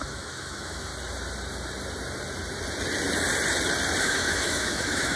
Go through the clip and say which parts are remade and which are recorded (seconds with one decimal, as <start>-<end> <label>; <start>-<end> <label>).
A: 0.0-0.9 remade; 0.9-4.0 recorded; 4.0-5.2 remade